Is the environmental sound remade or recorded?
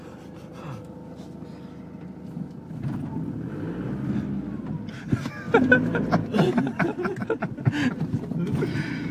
recorded